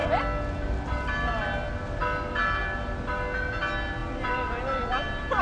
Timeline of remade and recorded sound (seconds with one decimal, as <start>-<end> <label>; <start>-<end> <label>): 0.0-5.4 recorded